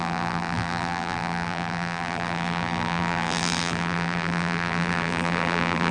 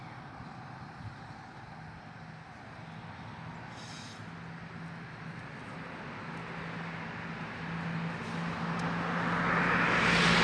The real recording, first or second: second